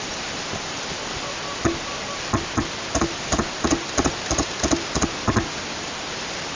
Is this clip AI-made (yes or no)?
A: yes